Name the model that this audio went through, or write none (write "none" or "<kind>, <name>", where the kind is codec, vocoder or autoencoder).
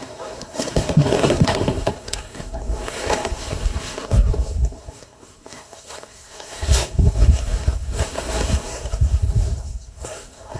codec, SNAC